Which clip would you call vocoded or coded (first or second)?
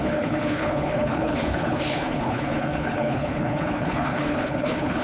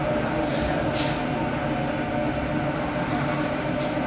first